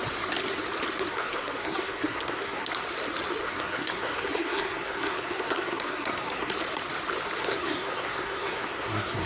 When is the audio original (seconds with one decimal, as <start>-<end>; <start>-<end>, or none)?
0.0-1.1; 2.7-3.4; 6.5-7.4